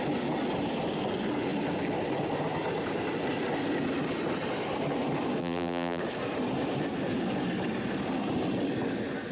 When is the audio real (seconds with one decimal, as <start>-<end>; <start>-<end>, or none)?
0.0-5.4; 6.0-9.3